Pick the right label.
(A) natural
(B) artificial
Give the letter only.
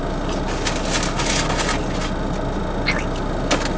A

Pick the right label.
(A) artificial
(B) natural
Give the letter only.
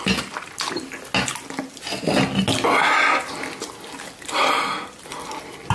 B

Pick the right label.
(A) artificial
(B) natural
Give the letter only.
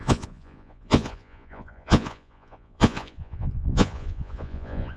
A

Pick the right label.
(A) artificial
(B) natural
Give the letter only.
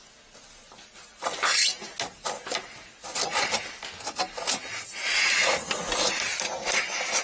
B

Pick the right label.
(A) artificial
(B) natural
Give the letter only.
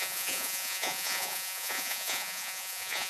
A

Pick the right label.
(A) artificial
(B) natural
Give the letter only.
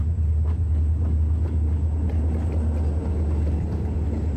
B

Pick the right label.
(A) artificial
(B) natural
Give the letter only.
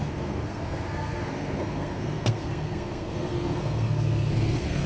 A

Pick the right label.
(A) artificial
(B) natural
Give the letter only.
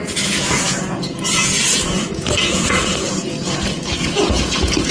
A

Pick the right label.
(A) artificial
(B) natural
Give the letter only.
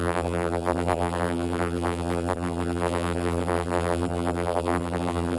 A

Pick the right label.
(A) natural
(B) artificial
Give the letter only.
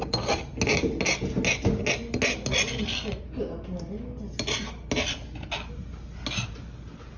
A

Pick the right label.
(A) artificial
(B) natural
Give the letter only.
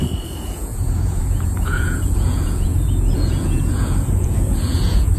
A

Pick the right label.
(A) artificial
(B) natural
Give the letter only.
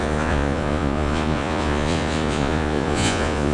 A